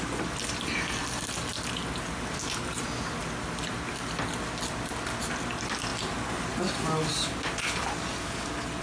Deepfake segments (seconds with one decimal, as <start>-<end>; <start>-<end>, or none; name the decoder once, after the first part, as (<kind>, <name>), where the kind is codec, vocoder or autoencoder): none